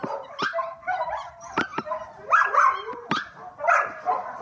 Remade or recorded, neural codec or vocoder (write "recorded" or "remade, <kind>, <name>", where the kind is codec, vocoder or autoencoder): recorded